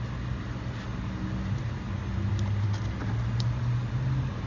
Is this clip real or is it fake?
real